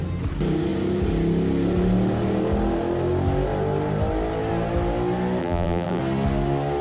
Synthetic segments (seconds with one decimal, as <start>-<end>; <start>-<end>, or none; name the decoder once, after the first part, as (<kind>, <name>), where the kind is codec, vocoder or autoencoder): 5.4-6.0 (vocoder, BigVGAN v2)